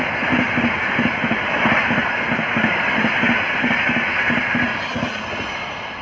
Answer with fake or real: real